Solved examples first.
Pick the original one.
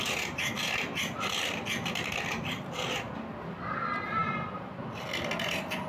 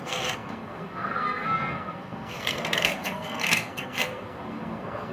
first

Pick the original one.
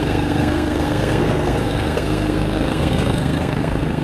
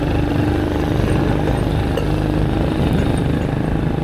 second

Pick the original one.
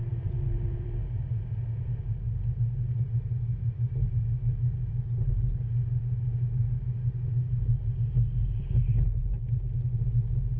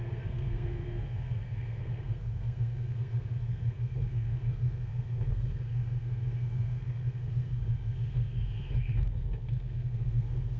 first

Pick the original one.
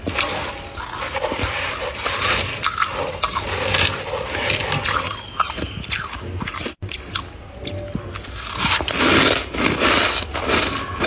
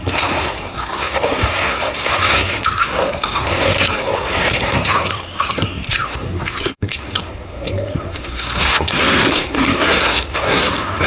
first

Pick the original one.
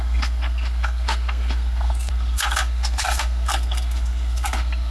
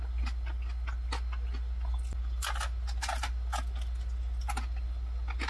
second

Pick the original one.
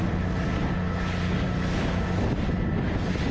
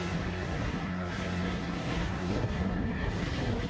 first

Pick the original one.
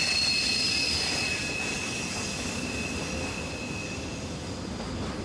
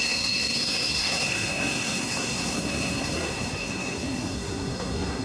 first